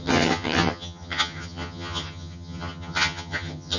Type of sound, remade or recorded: remade